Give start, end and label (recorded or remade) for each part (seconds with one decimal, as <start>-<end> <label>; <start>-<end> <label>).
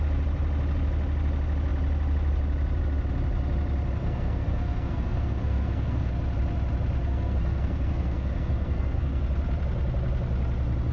0.0-4.0 recorded; 4.0-6.1 remade; 6.1-7.0 recorded; 7.0-9.2 remade; 9.2-10.9 recorded